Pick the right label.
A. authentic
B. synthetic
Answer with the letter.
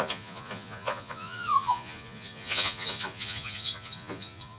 B